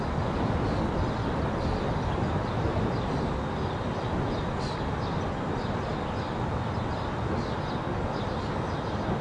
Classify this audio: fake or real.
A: real